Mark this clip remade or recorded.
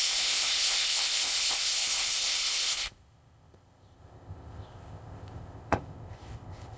remade